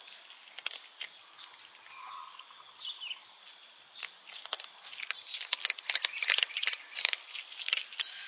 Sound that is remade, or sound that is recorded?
recorded